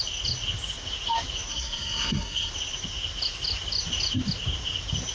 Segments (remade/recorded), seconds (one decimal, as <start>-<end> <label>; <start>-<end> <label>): 0.0-1.5 recorded; 1.5-2.5 remade; 2.5-5.1 recorded